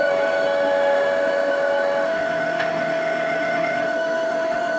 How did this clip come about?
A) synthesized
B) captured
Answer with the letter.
A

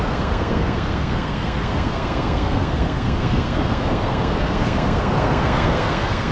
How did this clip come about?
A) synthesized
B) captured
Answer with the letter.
A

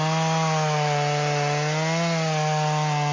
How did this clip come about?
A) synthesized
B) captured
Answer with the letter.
B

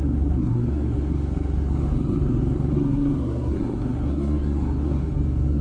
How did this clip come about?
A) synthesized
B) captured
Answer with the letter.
A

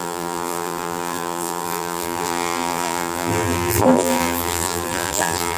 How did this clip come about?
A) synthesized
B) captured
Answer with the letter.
A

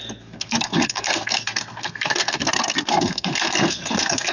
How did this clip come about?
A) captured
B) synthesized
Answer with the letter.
B